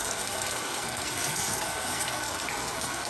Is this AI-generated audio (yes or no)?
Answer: yes